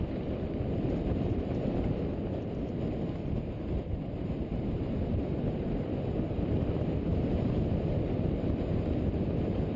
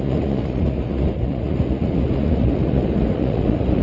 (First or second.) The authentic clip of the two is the first